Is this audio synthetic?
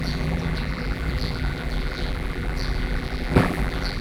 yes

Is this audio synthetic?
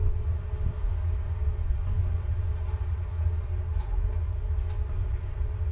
no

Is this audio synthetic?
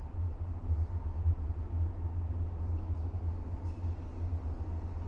no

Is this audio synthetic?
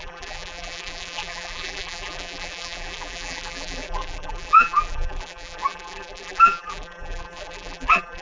yes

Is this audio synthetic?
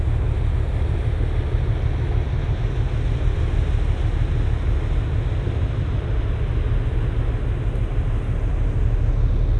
no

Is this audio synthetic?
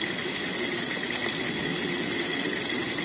no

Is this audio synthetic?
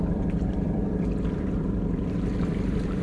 yes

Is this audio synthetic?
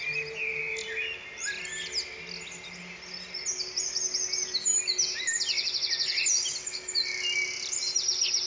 no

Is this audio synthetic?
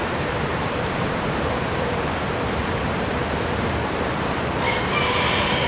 yes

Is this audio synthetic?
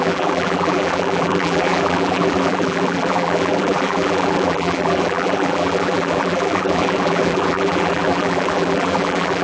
yes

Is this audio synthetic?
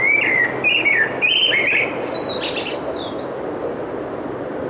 no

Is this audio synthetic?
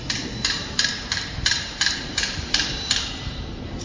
yes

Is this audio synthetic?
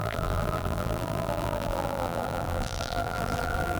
yes